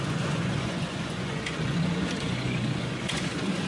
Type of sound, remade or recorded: remade